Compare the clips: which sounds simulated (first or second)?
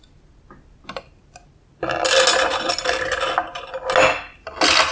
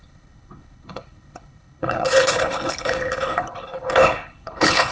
second